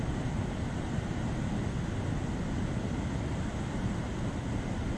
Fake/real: real